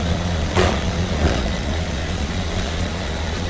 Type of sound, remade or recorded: remade